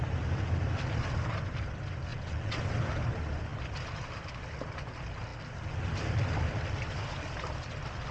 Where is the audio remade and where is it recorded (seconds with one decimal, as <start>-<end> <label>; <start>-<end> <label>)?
0.0-2.1 recorded; 2.1-2.6 remade; 2.6-8.1 recorded